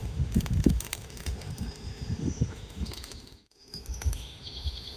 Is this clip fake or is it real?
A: fake